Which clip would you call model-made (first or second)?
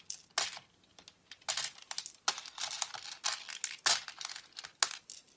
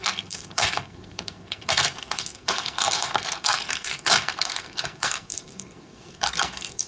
second